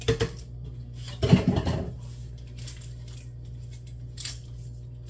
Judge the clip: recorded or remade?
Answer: recorded